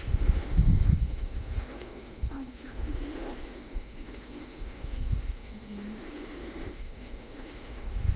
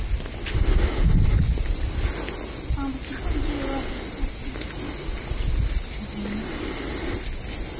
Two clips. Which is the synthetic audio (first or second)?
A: first